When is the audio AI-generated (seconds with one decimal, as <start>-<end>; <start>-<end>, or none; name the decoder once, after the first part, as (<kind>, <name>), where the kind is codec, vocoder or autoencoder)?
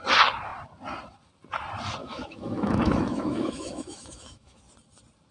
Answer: 2.0-4.6 (autoencoder, DAC-VAE)